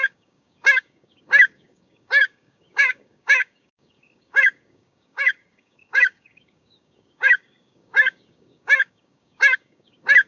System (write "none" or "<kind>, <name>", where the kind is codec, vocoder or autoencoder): codec, DAC